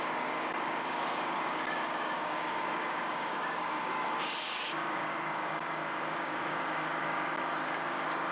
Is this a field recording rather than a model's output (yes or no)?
no